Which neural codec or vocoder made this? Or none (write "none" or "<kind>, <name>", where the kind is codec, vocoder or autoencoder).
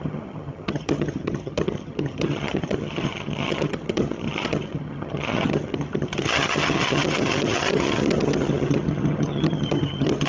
vocoder, HiFi-GAN